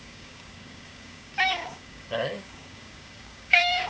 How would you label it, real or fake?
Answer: fake